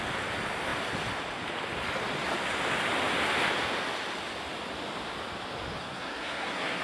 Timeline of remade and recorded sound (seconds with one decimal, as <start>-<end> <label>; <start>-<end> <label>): 0.0-5.8 recorded; 5.8-6.8 remade